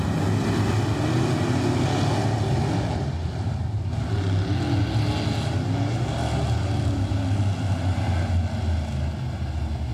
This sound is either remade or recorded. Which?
recorded